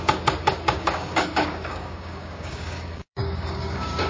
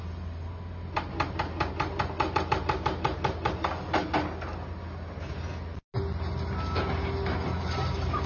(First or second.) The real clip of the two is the second